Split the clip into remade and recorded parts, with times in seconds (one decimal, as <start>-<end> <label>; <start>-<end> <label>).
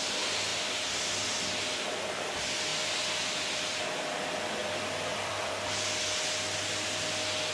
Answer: 0.0-2.7 recorded; 2.7-3.8 remade; 3.8-4.6 recorded; 4.6-5.5 remade; 5.5-7.5 recorded